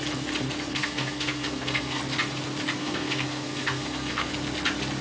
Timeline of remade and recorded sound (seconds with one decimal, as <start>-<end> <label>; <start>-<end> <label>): 0.0-0.7 recorded; 0.7-2.0 remade; 2.0-2.8 recorded; 2.8-4.3 remade; 4.3-5.0 recorded